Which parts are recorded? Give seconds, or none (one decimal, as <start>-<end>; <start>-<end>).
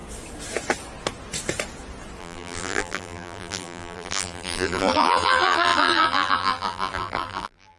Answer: 0.0-2.2